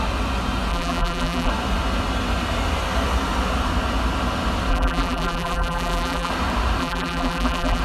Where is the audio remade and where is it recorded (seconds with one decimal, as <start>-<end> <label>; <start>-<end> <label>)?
0.0-0.7 recorded; 0.7-1.5 remade; 1.5-4.7 recorded; 4.7-6.3 remade; 6.3-6.8 recorded; 6.8-7.8 remade